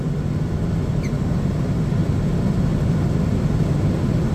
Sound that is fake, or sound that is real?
real